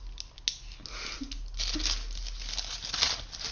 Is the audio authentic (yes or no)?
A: yes